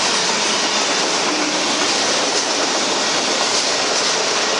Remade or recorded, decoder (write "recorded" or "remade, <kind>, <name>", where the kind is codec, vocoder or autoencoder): recorded